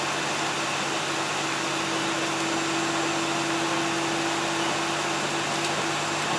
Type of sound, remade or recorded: recorded